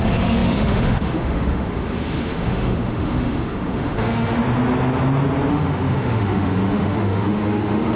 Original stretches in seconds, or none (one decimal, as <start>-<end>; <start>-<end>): 4.4-5.5